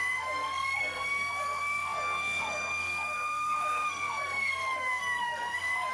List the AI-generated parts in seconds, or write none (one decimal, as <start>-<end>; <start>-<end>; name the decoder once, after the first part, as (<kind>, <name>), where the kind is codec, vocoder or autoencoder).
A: 0.0-5.9 (codec, SNAC)